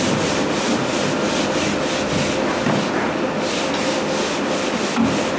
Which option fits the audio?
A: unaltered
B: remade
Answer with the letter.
A